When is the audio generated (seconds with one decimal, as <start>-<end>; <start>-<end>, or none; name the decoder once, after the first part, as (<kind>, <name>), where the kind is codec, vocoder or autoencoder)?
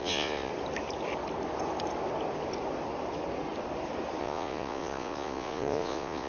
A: 0.0-0.5 (vocoder, Vocos); 4.2-6.3